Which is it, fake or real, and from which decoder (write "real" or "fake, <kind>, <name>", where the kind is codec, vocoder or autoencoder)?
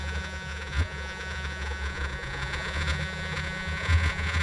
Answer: fake, vocoder, Vocos